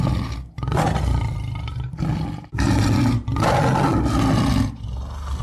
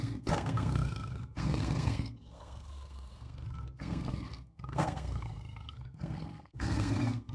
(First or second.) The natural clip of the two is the first